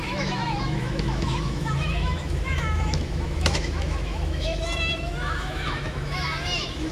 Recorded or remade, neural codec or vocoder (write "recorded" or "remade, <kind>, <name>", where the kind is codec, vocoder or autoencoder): remade, autoencoder, DAC-VAE